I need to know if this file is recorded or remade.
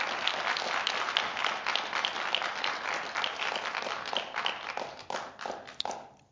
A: recorded